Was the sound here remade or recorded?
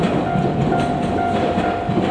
recorded